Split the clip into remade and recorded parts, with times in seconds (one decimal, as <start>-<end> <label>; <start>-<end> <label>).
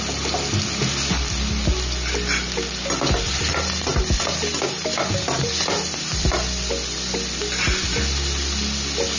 0.0-5.4 recorded; 5.4-6.7 remade; 6.7-9.2 recorded